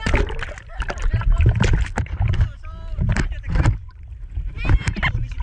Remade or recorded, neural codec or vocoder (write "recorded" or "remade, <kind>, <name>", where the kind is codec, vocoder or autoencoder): remade, vocoder, BigVGAN v2